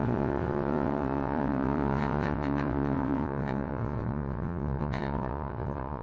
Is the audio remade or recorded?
remade